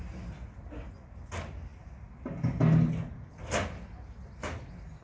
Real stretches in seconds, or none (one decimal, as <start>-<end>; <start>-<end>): 0.0-5.0